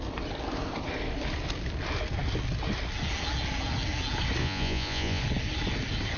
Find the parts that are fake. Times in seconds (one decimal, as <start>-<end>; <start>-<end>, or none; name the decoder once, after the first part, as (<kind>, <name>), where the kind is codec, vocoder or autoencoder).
4.4-5.2 (vocoder, Vocos)

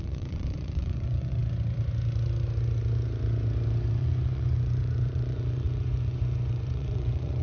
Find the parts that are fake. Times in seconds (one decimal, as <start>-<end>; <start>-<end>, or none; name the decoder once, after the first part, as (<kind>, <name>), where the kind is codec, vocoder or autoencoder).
0.0-1.4 (vocoder, Vocos); 4.0-7.4